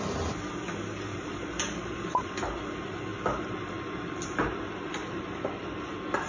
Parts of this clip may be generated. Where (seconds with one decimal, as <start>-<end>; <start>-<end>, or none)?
1.1-2.4; 3.1-5.8